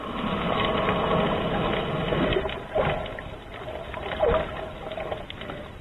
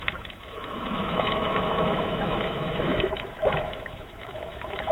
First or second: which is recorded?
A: first